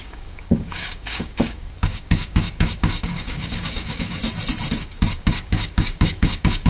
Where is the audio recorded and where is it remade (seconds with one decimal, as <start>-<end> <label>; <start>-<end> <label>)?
0.0-4.2 remade; 4.2-4.8 recorded; 4.8-6.7 remade